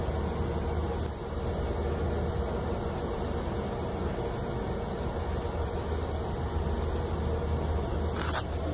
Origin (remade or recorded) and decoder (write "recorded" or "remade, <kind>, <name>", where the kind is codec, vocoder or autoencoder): recorded